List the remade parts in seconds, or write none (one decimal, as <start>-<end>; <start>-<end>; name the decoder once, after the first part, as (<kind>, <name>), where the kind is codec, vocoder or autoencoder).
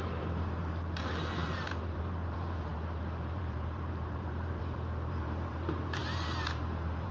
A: 0.0-7.1 (vocoder, BigVGAN v2)